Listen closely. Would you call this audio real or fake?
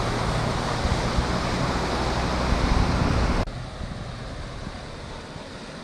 real